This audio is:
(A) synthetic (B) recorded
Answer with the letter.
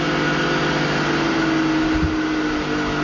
B